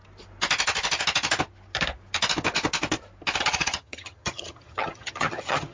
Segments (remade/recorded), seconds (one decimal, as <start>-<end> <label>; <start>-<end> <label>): 0.0-3.4 recorded; 3.4-5.7 remade